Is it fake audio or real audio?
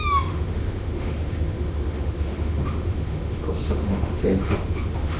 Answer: fake